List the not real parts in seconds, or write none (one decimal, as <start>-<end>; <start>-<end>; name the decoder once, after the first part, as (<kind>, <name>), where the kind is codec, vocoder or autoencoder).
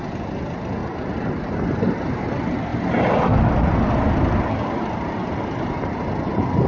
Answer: 0.8-1.5 (vocoder, BigVGAN v2)